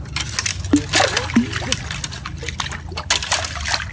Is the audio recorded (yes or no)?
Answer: yes